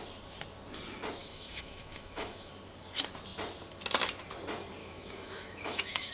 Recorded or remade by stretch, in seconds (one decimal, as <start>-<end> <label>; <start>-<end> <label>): 0.0-1.2 recorded; 1.2-2.5 remade; 2.5-4.8 recorded; 4.8-6.1 remade